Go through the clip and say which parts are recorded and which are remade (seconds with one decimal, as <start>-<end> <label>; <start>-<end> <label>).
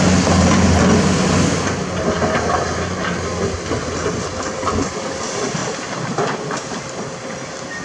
0.0-7.8 recorded